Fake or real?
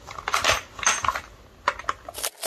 real